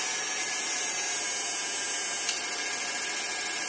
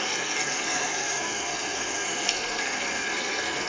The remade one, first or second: second